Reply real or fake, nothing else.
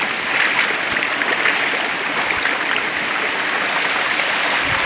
real